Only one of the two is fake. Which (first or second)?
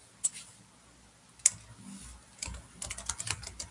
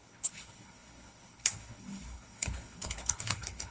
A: second